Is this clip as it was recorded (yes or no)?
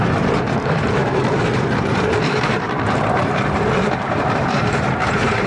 no